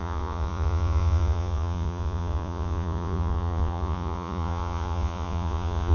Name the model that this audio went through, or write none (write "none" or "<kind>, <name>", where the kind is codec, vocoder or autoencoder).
vocoder, Vocos